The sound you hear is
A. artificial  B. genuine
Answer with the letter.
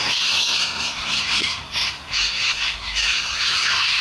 A